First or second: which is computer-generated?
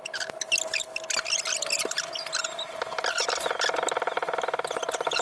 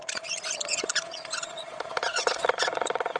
second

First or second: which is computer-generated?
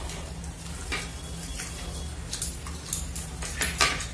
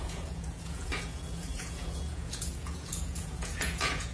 second